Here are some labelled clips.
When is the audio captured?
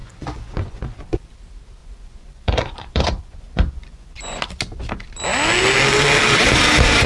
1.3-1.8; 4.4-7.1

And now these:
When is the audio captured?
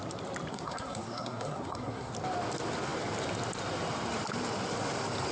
0.0-0.5; 2.1-5.3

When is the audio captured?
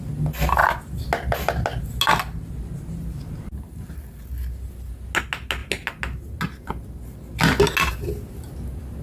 0.0-9.0